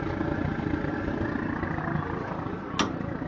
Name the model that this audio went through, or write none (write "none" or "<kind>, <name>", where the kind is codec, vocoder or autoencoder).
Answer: none